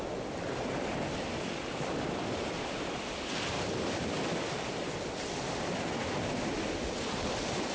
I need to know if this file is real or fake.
real